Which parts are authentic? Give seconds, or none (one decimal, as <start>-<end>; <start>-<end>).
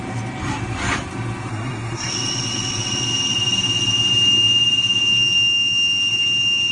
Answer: 0.0-1.5; 2.1-6.7